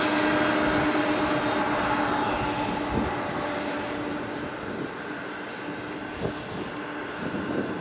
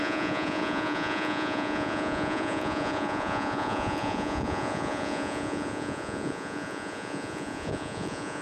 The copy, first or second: second